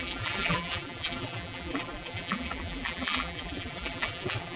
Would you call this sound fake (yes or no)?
yes